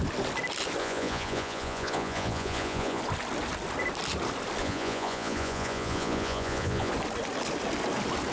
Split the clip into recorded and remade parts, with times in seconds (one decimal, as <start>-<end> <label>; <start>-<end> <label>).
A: 0.0-0.8 recorded; 0.8-3.0 remade; 3.0-4.6 recorded; 4.6-6.9 remade; 6.9-8.3 recorded